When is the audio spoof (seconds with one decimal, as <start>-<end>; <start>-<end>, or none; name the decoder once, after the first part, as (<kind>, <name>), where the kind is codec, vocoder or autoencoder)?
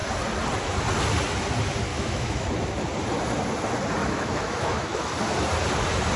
1.9-2.5 (autoencoder, DAC-VAE); 4.0-5.1